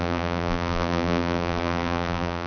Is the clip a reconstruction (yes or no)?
yes